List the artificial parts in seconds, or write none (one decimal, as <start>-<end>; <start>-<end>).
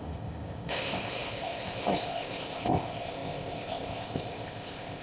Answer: 0.0-5.0